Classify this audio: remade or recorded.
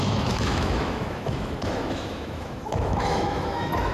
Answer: remade